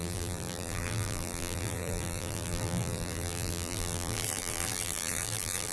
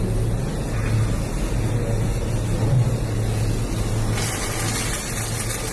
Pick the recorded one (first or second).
second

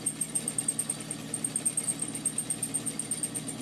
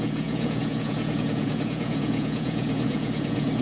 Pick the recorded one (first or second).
first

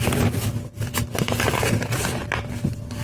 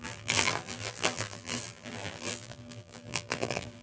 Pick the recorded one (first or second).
first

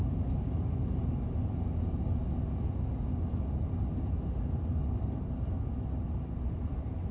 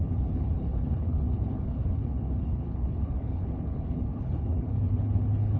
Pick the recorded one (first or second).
first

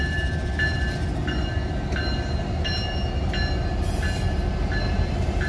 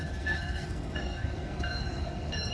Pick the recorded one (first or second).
first